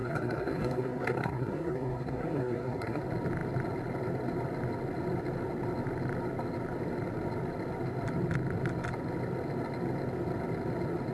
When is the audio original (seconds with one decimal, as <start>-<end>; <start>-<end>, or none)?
3.0-11.1